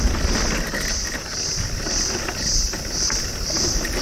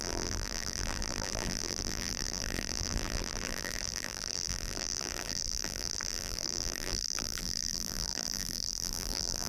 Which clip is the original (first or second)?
first